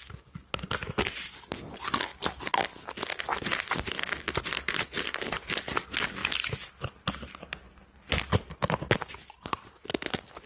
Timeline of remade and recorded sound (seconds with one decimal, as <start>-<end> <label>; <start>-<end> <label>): 0.0-10.5 recorded